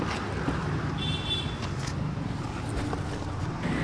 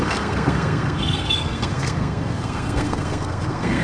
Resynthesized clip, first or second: second